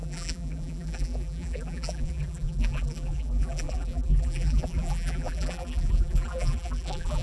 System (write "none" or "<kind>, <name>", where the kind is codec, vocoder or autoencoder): vocoder, BigVGAN v2